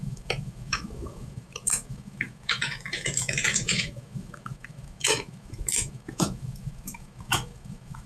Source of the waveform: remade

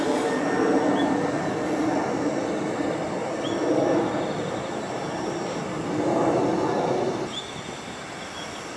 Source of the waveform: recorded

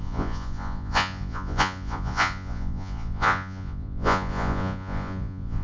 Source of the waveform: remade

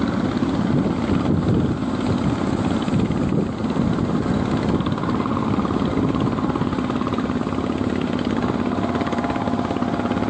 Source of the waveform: recorded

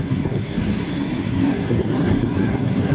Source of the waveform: remade